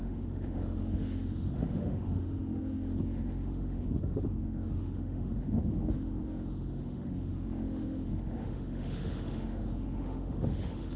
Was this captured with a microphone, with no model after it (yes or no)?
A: no